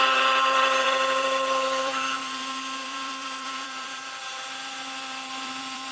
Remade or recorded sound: remade